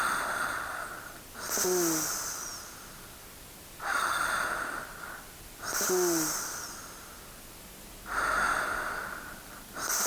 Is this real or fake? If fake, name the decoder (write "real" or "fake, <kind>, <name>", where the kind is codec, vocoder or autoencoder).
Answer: real